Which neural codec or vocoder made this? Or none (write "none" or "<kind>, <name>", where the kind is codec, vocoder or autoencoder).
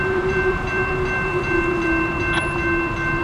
vocoder, BigVGAN v2